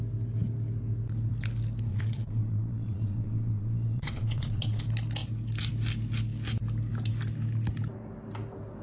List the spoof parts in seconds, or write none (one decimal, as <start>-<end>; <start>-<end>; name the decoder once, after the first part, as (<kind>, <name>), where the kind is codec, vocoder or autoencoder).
1.9-4.8 (vocoder, Vocos)